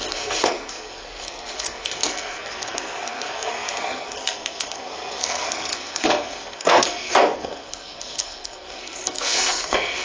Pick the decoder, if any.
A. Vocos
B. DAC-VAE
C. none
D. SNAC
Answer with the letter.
D